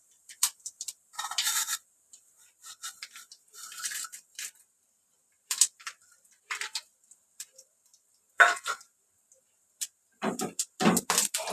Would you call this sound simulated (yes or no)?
yes